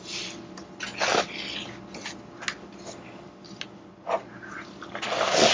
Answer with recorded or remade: recorded